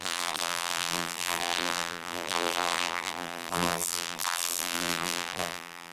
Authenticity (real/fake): fake